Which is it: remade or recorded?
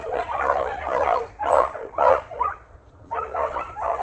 remade